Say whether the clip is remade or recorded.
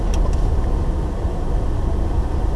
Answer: recorded